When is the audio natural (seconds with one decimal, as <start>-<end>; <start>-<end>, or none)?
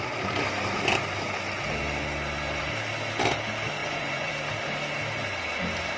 0.0-3.8; 4.3-6.0